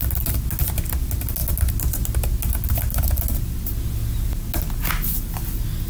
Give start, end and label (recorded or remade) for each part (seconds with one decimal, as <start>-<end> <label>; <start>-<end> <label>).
0.0-5.9 recorded